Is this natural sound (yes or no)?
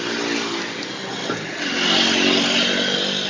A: yes